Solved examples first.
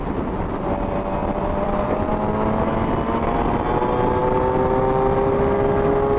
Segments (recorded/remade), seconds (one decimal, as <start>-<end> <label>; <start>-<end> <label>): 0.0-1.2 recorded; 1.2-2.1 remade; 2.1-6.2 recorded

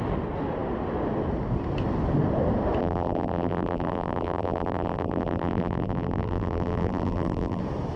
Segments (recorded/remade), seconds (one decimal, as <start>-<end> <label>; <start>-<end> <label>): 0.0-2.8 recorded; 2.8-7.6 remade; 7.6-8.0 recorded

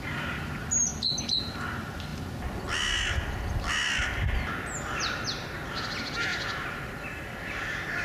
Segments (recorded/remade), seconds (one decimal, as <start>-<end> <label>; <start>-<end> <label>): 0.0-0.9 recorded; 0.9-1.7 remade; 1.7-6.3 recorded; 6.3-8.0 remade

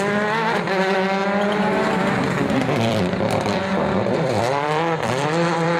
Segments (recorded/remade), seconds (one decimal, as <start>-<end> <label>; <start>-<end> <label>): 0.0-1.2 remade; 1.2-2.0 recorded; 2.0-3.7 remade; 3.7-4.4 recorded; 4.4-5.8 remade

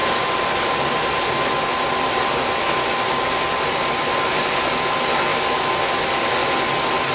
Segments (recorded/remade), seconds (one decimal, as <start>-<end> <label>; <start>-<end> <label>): 0.0-0.5 remade; 0.5-7.1 recorded